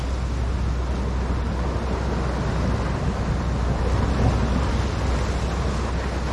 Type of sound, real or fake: real